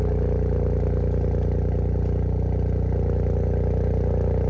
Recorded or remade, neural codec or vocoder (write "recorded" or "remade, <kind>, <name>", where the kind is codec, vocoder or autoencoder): recorded